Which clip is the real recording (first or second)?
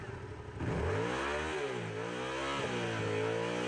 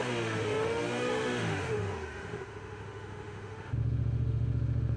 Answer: first